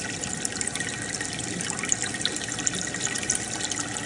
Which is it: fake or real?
real